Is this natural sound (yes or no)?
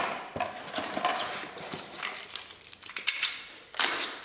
yes